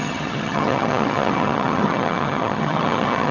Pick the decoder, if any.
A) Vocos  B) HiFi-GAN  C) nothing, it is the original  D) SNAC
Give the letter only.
B